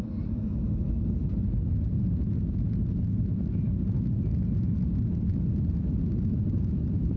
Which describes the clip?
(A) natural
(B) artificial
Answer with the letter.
A